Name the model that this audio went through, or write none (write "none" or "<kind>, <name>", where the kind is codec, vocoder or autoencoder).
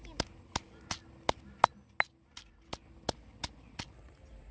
none